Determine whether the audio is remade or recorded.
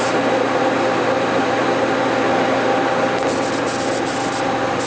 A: recorded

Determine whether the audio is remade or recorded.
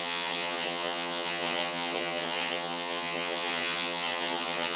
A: remade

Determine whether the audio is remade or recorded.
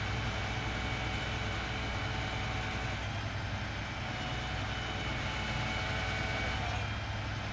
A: recorded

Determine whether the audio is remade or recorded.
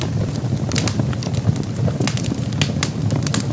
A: recorded